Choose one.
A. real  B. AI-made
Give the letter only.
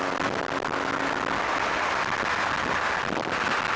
A